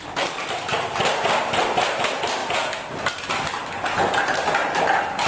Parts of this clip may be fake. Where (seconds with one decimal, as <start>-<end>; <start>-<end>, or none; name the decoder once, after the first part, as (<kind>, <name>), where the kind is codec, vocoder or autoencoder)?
4.6-5.3 (vocoder, BigVGAN v2)